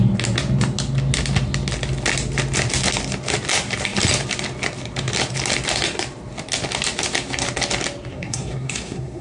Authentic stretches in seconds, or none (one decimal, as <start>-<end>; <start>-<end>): 0.0-8.1